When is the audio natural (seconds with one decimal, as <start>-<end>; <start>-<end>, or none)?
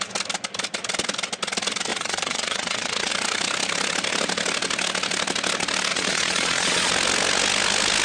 0.0-1.9; 3.1-5.9; 6.9-8.0